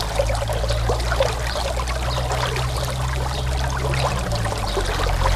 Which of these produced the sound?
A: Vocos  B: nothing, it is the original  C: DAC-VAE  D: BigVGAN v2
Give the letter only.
B